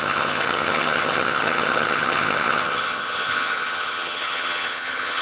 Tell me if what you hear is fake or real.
fake